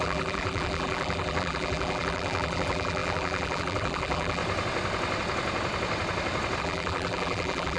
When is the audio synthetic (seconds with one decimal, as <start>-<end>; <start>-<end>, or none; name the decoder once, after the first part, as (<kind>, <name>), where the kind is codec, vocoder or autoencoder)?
0.0-4.4 (vocoder, BigVGAN v2); 6.6-7.8